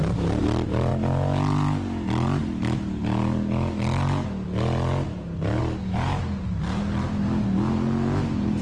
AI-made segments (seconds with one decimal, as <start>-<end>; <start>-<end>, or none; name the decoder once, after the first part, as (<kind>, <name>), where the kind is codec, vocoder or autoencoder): none